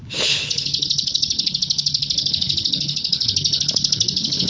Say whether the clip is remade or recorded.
remade